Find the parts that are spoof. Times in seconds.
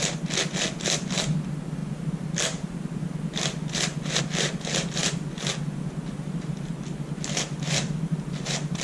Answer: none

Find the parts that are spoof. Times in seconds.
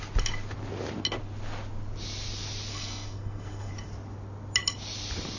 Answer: 2.7-3.7